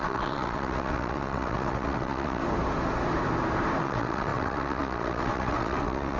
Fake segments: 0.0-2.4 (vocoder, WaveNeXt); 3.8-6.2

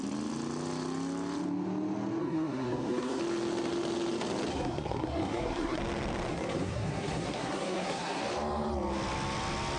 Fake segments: 2.2-3.2 (codec, SNAC); 4.5-5.8; 6.3-8.2

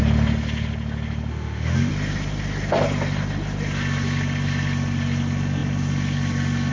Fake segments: 1.3-1.9 (autoencoder, DAC-VAE)

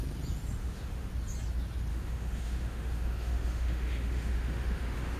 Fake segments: 0.6-1.1 (autoencoder, DAC-VAE); 1.9-5.2

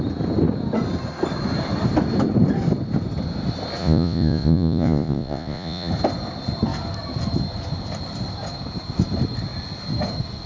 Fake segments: 3.8-5.9 (vocoder, Vocos)

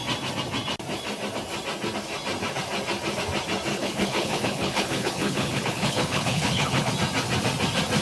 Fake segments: 3.7-6.9 (codec, HILCodec)

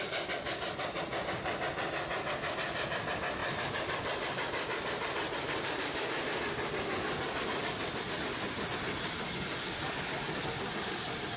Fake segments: none